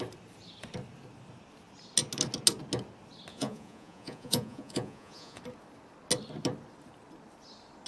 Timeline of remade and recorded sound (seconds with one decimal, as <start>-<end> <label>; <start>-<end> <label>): 0.0-3.3 recorded; 3.3-5.4 remade; 5.4-7.9 recorded